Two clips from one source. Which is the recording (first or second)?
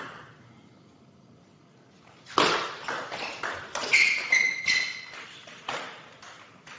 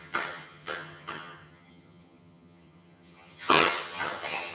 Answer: first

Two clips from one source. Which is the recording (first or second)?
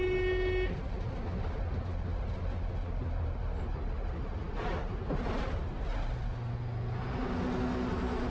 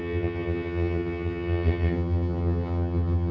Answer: first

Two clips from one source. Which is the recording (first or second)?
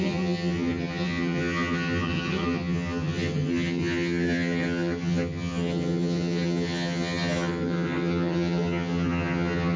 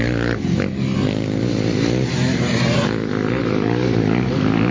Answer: second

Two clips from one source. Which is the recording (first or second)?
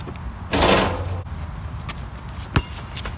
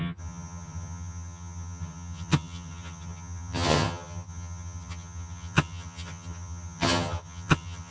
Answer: first